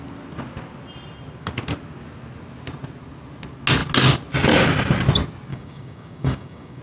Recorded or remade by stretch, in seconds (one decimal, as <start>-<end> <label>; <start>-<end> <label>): 0.0-5.5 recorded; 5.5-6.8 remade